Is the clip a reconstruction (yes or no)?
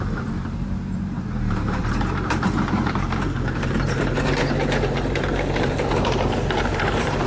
yes